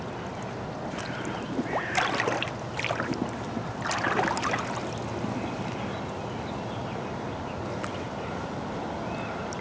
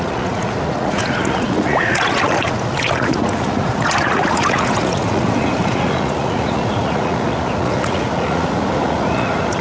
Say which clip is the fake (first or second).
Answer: second